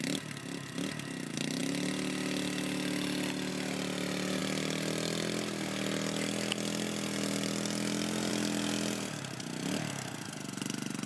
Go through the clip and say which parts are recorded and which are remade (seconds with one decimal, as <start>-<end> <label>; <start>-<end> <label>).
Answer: 0.0-11.1 recorded